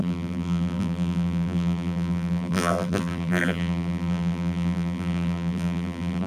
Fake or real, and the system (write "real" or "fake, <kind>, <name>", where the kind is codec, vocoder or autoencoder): fake, vocoder, BigVGAN v2